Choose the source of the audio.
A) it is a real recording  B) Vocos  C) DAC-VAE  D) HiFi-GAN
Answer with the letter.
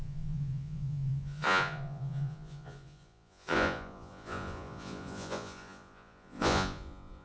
B